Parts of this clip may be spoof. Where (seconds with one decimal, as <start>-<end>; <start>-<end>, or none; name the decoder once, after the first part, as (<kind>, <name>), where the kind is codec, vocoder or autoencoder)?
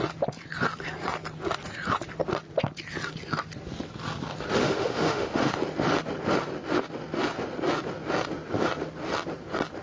4.6-5.5 (autoencoder, DAC-VAE)